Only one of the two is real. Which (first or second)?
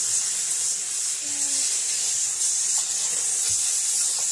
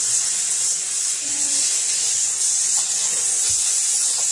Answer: first